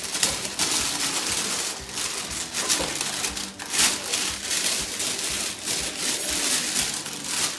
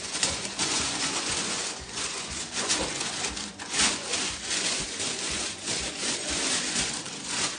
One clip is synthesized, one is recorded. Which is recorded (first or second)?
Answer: first